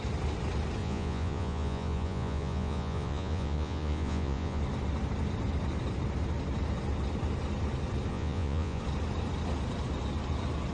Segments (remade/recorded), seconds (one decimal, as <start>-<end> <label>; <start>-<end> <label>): 0.0-0.8 recorded; 0.8-4.6 remade; 4.6-8.1 recorded; 8.1-8.8 remade; 8.8-10.7 recorded